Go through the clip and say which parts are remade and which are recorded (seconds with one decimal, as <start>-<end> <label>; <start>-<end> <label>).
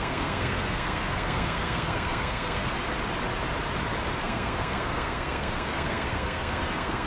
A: 0.0-2.7 remade; 2.7-4.2 recorded; 4.2-7.1 remade